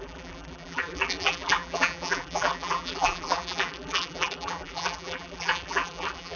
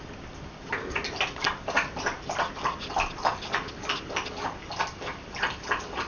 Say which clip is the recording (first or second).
second